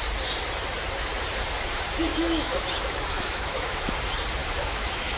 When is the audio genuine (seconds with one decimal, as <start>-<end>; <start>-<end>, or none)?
0.0-2.1; 3.9-4.4